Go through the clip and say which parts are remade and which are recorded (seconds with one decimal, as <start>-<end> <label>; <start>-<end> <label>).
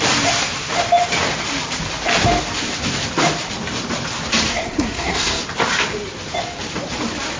0.0-4.5 recorded; 4.5-5.4 remade; 5.4-7.4 recorded